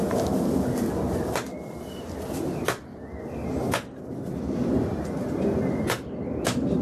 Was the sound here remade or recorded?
recorded